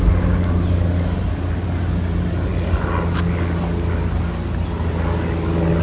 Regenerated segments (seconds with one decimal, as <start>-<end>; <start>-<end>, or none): none